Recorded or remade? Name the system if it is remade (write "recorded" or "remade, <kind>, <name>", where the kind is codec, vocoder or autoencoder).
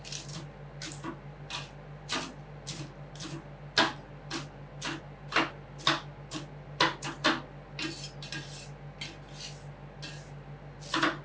recorded